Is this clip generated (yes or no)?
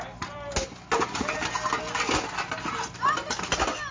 no